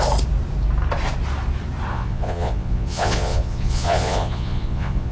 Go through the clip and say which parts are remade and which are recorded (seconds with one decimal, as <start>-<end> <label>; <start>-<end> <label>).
0.0-1.9 recorded; 1.9-5.1 remade